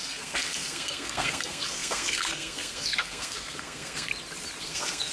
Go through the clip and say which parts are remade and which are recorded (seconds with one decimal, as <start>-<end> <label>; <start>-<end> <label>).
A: 0.0-4.1 remade; 4.1-4.6 recorded; 4.6-5.1 remade